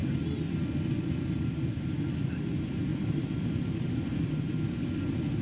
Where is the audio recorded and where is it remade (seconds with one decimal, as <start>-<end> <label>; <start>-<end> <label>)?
0.0-2.3 recorded; 2.3-5.4 remade